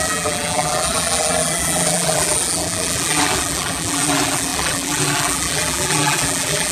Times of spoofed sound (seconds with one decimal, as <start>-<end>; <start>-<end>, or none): 0.0-6.7